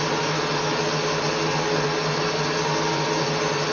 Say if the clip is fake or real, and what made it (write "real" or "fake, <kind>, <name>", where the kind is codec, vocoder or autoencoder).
real